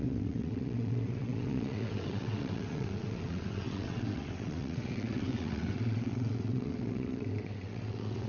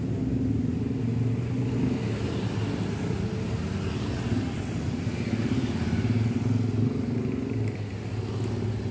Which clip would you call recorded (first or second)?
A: second